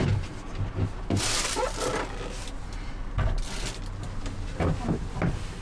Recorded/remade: recorded